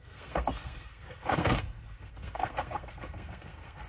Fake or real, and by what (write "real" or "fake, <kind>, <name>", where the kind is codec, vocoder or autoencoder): fake, codec, SNAC